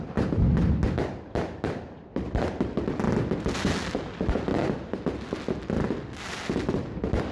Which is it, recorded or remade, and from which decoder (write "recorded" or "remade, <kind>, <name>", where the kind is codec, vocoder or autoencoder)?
recorded